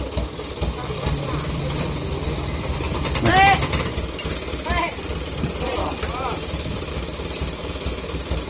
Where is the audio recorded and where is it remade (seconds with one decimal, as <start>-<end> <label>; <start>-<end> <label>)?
0.0-5.8 recorded; 5.8-6.9 remade; 6.9-8.5 recorded